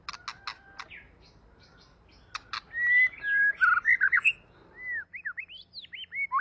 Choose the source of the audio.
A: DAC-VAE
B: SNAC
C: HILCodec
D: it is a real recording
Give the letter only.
D